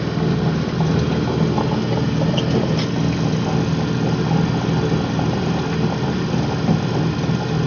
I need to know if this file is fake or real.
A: real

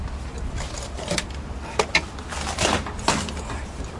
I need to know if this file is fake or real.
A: real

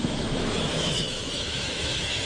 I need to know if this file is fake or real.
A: fake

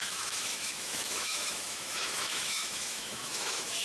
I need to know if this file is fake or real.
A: fake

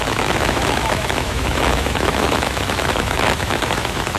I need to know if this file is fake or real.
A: fake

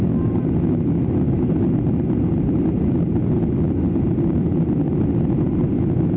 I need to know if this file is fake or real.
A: real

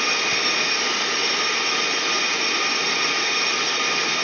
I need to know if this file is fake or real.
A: real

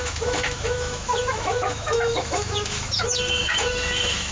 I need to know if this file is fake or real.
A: fake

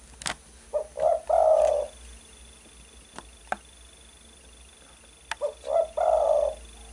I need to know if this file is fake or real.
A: real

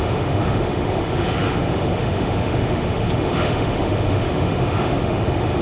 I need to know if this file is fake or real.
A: fake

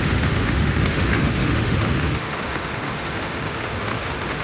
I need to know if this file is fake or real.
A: fake